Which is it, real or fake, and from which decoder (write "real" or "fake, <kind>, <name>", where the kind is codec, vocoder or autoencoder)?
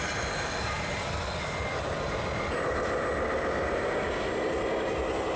real